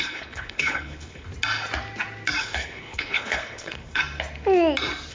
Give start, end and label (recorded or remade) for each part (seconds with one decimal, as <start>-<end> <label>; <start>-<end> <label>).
0.0-1.3 remade; 1.3-2.4 recorded; 2.4-4.0 remade; 4.0-5.1 recorded